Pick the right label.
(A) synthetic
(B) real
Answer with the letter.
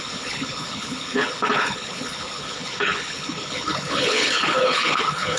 A